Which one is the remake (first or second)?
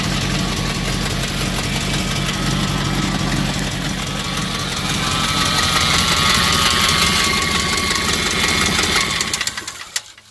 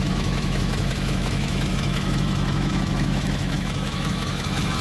second